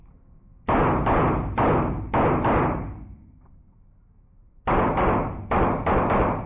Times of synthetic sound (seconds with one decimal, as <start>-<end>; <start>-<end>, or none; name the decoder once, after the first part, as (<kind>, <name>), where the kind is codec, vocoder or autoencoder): none